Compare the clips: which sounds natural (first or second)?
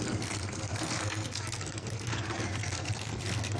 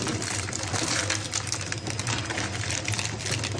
second